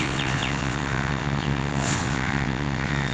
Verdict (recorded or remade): remade